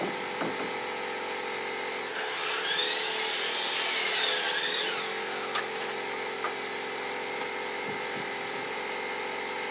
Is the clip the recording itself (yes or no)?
yes